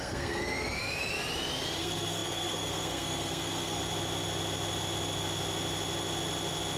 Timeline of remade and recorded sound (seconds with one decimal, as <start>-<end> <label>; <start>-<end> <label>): 0.0-0.4 remade; 0.4-1.8 recorded; 1.8-3.8 remade; 3.8-6.8 recorded

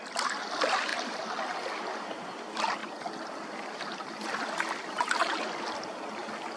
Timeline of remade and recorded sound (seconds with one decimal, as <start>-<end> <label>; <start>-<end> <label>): 0.0-6.6 recorded